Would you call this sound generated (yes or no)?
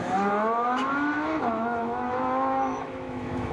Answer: yes